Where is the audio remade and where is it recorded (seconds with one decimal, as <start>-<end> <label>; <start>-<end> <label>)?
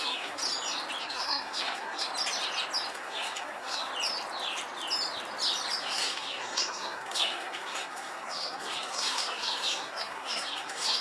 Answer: 0.0-0.4 remade; 0.4-1.0 recorded; 1.0-2.1 remade; 2.1-2.9 recorded; 2.9-3.9 remade; 3.9-5.8 recorded; 5.8-11.0 remade